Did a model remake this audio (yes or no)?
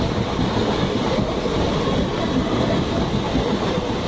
no